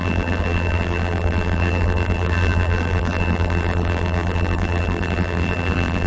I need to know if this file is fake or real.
fake